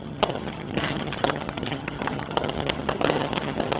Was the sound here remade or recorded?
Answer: remade